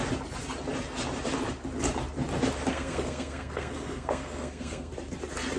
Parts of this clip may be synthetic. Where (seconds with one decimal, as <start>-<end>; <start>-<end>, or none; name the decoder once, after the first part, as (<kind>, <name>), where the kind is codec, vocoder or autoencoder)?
2.7-4.9 (codec, SNAC)